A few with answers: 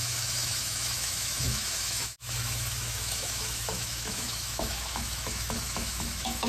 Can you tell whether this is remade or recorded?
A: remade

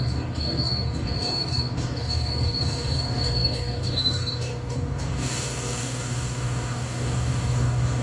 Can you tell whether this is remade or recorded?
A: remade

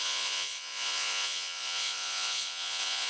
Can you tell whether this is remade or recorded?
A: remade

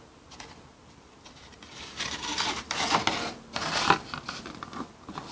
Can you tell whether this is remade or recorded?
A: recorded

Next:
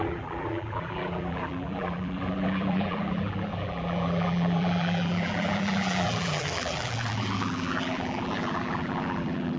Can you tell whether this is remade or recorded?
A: remade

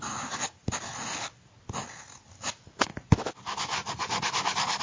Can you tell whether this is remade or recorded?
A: recorded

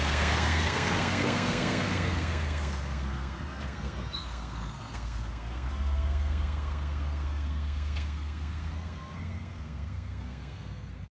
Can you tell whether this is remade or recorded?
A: remade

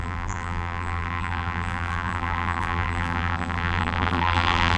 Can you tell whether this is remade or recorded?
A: remade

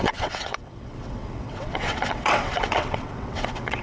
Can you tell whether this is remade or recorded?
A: remade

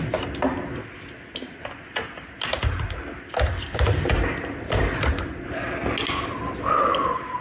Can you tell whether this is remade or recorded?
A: recorded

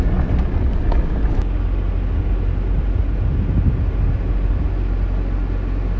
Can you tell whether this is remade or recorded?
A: recorded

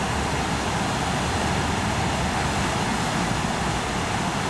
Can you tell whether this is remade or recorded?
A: recorded